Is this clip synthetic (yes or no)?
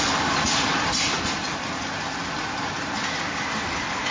no